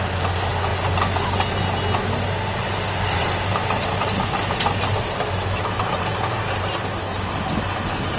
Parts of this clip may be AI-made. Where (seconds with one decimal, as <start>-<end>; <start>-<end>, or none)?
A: none